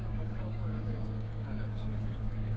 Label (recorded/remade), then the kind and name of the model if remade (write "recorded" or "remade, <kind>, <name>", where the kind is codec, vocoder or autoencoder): remade, codec, DAC